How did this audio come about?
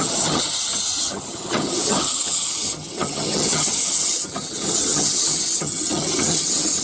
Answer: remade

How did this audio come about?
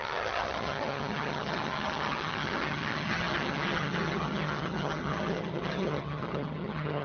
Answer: remade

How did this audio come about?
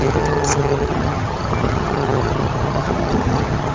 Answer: remade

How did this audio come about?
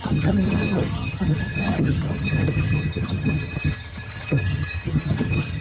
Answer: remade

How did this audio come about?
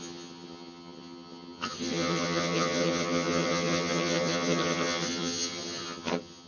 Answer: remade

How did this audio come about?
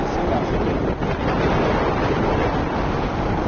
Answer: recorded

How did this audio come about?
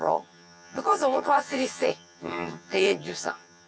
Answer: remade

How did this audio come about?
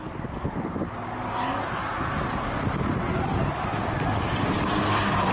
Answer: recorded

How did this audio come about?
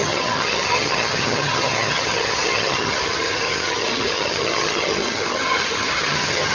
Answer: remade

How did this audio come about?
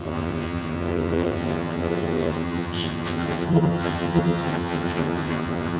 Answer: remade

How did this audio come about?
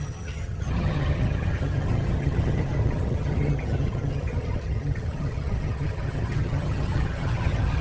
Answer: remade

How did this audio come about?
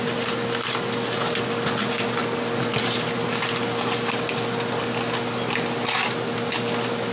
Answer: recorded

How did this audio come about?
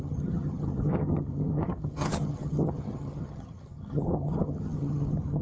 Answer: remade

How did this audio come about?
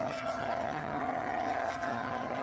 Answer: remade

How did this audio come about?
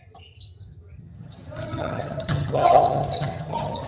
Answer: remade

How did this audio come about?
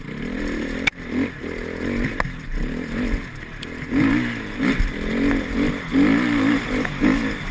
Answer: recorded